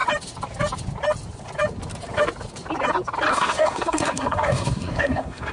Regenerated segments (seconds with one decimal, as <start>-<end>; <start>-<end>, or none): 3.3-5.5